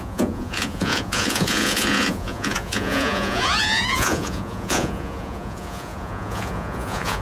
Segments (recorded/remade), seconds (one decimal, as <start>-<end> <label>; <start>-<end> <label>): 0.0-7.2 remade